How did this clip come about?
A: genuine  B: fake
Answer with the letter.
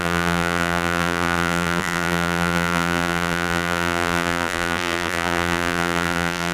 B